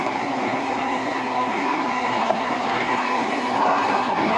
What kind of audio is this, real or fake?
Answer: fake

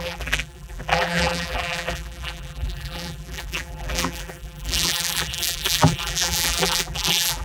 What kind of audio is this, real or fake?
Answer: fake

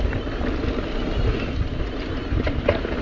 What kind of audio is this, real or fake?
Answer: real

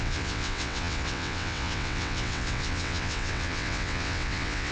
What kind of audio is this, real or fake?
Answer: fake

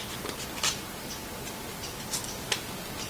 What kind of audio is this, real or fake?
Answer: real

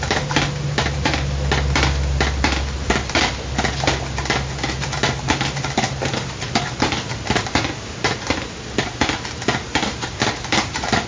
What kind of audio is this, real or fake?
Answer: real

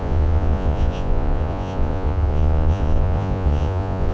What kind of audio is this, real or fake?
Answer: fake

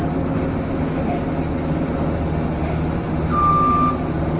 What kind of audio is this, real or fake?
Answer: real